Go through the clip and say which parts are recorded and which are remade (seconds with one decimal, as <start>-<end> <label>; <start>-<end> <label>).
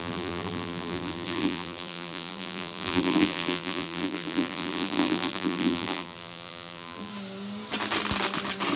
0.0-7.1 remade; 7.1-8.8 recorded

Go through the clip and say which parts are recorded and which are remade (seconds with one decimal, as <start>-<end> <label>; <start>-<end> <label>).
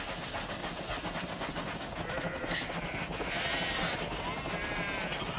0.0-0.6 recorded; 0.6-3.8 remade; 3.8-5.4 recorded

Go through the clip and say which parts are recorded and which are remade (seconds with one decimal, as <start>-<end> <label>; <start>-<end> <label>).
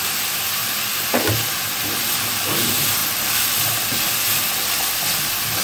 0.0-0.6 recorded; 0.6-1.3 remade; 1.3-3.0 recorded; 3.0-4.1 remade; 4.1-5.6 recorded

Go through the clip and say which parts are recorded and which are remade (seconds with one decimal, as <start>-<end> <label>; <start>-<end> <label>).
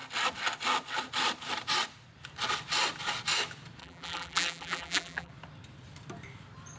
0.0-3.8 recorded; 3.8-5.3 remade; 5.3-6.8 recorded